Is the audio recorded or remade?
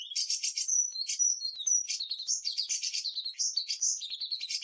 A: remade